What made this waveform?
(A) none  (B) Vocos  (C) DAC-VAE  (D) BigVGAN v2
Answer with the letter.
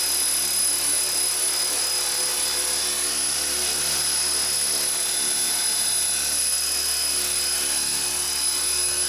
A